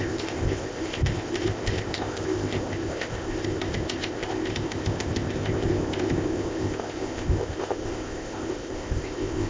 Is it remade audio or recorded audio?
remade